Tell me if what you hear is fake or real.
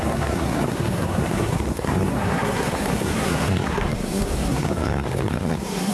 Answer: fake